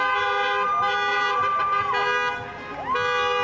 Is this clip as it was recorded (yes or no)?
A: yes